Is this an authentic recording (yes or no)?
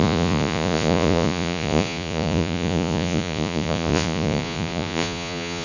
no